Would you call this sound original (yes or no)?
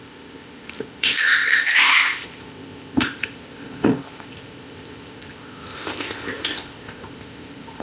no